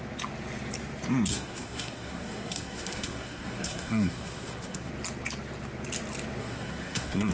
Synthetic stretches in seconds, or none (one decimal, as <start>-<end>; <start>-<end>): 1.3-4.9; 6.4-7.3